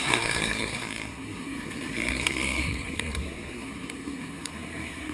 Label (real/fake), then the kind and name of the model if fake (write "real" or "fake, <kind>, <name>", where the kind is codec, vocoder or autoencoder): fake, codec, SNAC